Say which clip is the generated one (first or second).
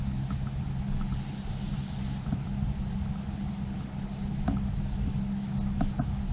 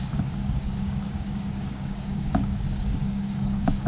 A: second